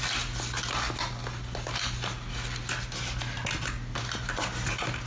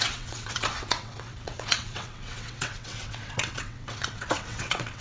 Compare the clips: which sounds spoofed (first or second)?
second